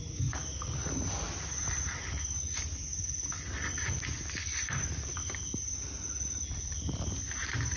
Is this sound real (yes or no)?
yes